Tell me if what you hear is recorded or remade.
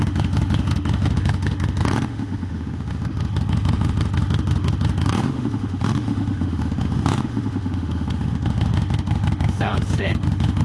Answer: remade